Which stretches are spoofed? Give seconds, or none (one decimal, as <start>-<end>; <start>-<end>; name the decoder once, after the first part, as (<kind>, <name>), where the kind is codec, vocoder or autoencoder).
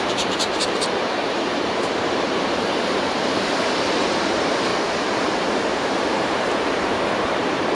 0.0-4.7 (vocoder, BigVGAN v2); 5.5-7.7